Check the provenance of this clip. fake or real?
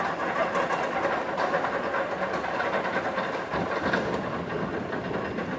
real